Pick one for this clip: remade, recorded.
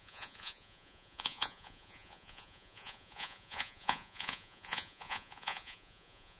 remade